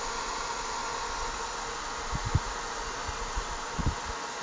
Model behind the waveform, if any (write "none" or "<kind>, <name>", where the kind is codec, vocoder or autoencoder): none